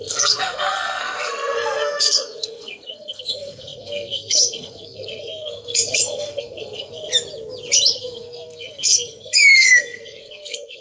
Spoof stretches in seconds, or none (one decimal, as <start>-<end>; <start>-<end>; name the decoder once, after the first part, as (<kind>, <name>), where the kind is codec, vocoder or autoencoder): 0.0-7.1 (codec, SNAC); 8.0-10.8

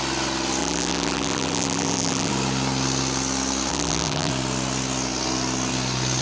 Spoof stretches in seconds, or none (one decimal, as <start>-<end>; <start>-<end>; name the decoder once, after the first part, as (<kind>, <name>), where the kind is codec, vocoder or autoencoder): 0.6-2.3 (vocoder, BigVGAN v2); 3.7-4.3

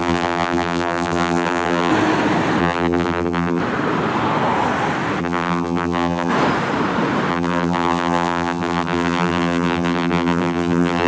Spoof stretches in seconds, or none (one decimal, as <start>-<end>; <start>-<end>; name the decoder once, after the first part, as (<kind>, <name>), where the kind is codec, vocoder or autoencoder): 0.0-1.9 (vocoder, BigVGAN v2); 2.6-3.6; 5.2-6.3; 7.3-11.1

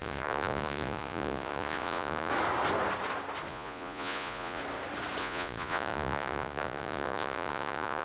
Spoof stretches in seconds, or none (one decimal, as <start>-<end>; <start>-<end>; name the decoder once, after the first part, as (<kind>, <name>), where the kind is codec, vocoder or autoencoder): 0.0-2.3 (vocoder, Vocos); 3.5-4.6; 5.2-8.0

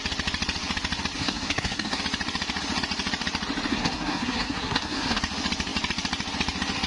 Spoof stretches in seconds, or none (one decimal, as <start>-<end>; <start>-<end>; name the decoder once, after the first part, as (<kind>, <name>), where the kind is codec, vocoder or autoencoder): 1.2-2.0 (codec, SNAC); 3.7-5.2

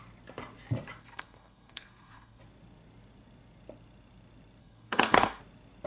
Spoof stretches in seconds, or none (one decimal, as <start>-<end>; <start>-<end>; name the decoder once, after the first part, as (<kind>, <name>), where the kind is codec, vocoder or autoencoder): 1.0-2.4 (codec, SNAC); 4.6-5.4